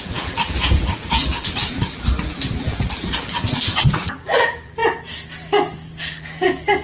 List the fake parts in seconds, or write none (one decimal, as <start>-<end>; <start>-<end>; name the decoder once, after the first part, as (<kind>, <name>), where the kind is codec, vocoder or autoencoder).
0.0-4.8 (vocoder, BigVGAN v2); 6.0-6.8